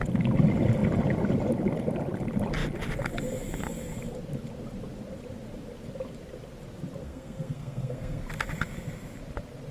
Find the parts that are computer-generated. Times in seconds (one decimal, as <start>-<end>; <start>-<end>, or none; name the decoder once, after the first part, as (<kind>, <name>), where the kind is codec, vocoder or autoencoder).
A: 7.0-8.2 (codec, SNAC)